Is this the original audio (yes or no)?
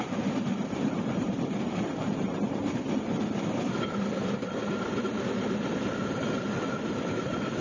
no